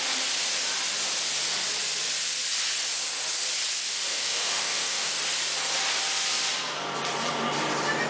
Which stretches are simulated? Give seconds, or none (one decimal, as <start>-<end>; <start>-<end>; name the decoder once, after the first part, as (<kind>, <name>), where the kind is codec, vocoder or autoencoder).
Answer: 3.9-5.1 (autoencoder, DAC-VAE)